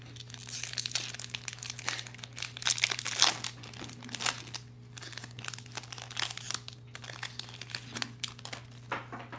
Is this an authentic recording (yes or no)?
yes